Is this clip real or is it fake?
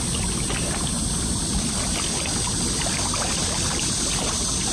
real